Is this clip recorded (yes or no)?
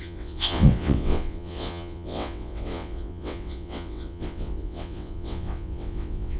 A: no